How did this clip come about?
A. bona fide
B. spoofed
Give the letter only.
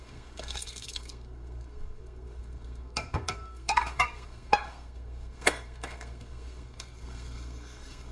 B